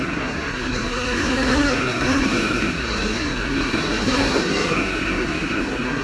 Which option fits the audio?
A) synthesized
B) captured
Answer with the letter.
A